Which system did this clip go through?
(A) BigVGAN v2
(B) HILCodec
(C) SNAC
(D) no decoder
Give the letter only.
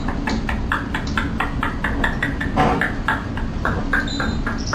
D